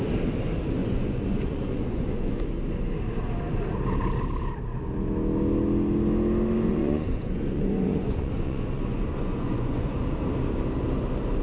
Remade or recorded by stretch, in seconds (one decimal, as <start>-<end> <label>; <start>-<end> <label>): 0.0-0.8 recorded; 0.8-2.4 remade; 2.4-6.7 recorded; 6.7-10.0 remade; 10.0-11.4 recorded